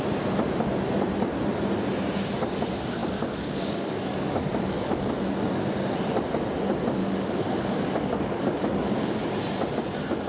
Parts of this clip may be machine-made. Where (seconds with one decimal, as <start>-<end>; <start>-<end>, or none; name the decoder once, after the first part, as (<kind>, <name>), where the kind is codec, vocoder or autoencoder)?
3.0-5.1 (codec, DAC); 7.0-9.2